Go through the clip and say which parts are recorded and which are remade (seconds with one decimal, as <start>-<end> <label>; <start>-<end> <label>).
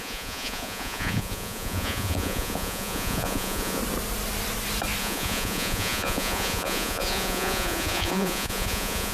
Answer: 0.0-3.8 remade; 3.8-5.0 recorded; 5.0-9.1 remade